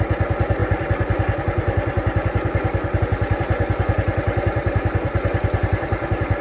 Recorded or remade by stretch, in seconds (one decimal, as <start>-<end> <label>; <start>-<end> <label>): 0.0-6.4 recorded